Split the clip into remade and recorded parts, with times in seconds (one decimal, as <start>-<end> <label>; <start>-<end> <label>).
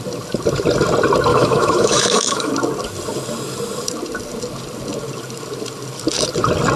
0.0-1.3 recorded; 1.3-2.5 remade; 2.5-6.8 recorded